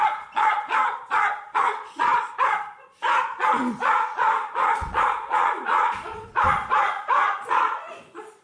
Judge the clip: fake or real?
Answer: fake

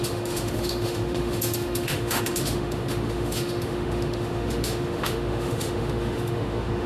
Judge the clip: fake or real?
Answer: fake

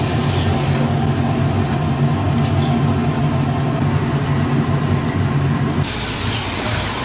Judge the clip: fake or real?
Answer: real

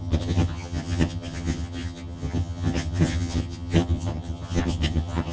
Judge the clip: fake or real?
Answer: fake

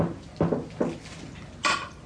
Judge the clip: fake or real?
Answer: real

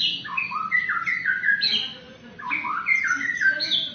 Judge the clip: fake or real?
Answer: real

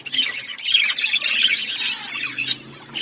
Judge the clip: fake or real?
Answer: real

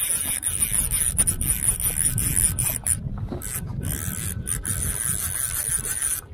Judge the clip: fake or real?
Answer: real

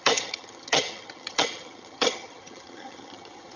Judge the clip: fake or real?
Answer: fake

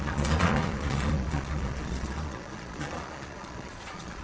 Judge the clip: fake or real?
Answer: fake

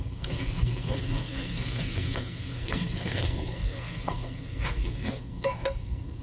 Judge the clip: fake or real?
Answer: fake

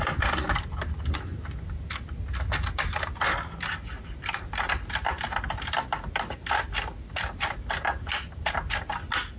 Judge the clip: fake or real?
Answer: real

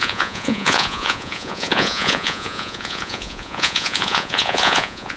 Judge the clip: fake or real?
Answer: fake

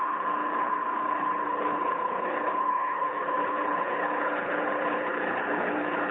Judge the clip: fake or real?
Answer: fake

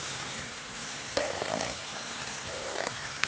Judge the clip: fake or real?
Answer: fake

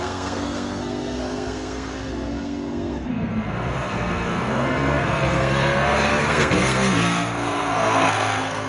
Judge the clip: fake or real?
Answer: fake